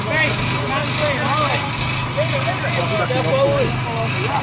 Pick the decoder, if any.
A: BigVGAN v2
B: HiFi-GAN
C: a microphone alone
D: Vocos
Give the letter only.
C